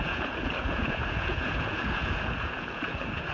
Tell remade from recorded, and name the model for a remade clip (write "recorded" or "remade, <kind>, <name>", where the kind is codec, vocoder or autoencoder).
remade, vocoder, Vocos